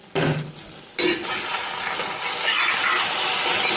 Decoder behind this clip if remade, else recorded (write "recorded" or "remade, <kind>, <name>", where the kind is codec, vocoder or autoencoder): recorded